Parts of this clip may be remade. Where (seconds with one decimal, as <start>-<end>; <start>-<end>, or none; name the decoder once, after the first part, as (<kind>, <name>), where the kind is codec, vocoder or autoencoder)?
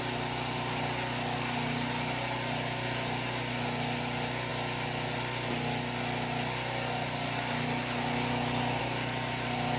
none